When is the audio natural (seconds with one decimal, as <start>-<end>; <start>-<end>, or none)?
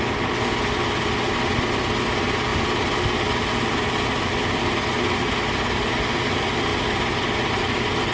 0.0-8.1